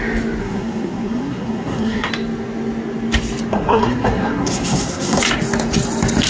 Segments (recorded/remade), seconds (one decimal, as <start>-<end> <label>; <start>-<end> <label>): 0.0-0.4 recorded; 0.4-2.1 remade; 2.1-3.5 recorded; 3.5-5.2 remade; 5.2-6.3 recorded

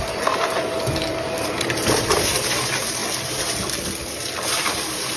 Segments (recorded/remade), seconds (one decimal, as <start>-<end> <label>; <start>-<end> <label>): 0.0-3.0 remade; 3.0-4.6 recorded; 4.6-5.2 remade

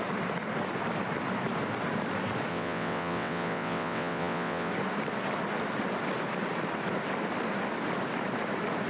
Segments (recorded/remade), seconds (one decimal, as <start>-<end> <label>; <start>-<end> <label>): 0.0-2.5 recorded; 2.5-4.7 remade; 4.7-8.9 recorded